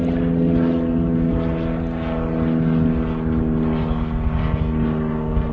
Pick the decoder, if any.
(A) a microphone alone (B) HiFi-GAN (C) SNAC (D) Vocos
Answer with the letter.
A